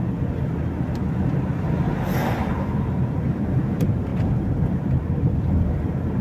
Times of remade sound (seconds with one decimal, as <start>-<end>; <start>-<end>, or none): none